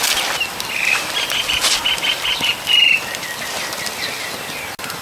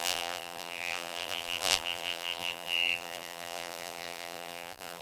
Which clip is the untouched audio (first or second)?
first